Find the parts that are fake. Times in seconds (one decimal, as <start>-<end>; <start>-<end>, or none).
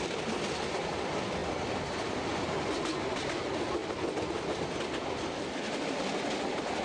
none